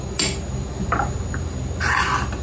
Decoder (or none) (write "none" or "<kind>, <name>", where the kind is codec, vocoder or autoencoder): none